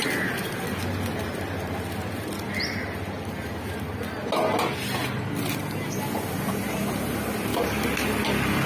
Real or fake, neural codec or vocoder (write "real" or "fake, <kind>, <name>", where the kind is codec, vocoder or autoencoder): real